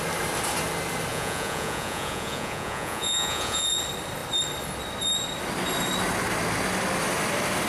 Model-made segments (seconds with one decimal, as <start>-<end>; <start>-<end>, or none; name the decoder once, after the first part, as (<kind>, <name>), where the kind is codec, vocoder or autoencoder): 1.1-3.8 (vocoder, Vocos)